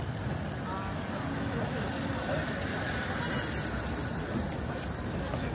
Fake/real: real